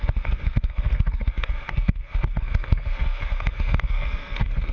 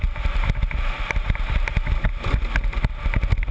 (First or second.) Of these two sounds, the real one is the second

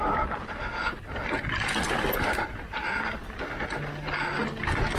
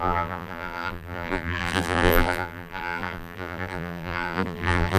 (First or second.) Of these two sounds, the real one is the first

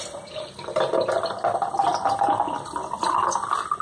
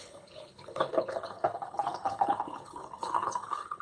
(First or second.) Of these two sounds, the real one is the first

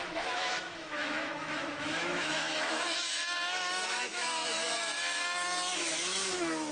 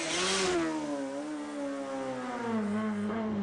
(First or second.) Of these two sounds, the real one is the second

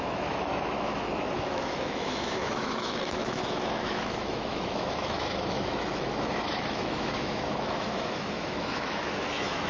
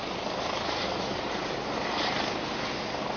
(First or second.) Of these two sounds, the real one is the second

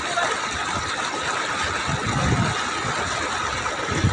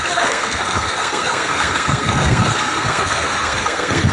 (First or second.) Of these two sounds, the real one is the first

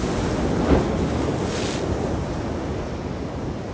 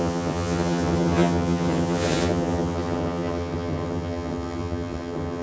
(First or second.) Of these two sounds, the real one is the first